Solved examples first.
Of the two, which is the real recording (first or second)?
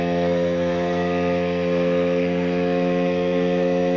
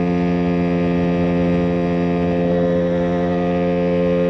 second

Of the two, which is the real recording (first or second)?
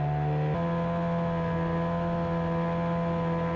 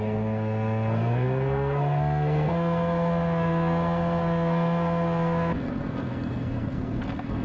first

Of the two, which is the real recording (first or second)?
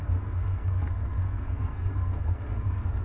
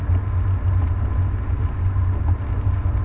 second